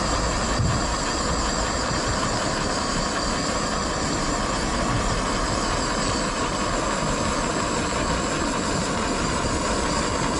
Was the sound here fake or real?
real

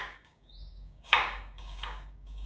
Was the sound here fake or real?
fake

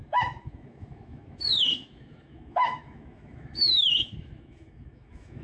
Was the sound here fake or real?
fake